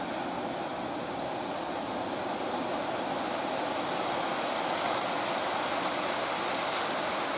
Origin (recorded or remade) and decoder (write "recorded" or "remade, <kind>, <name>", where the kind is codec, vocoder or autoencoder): recorded